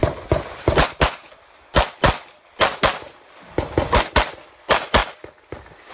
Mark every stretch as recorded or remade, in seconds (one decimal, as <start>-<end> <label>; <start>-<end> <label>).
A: 0.0-5.9 recorded